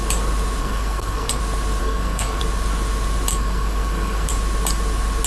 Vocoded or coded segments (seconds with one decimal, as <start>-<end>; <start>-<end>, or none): 0.6-1.4; 1.8-2.4; 3.3-4.3